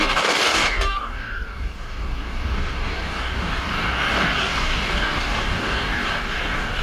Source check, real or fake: fake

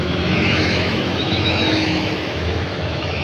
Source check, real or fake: fake